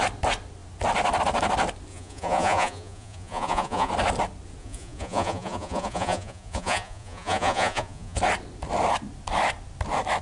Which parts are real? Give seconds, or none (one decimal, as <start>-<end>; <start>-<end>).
0.0-1.9; 3.9-4.6; 8.2-10.2